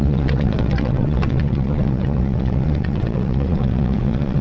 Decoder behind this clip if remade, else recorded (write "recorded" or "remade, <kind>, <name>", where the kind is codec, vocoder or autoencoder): remade, vocoder, WaveNeXt